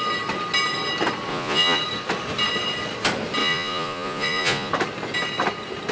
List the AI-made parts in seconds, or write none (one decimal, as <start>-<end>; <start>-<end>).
1.3-1.8; 3.4-4.7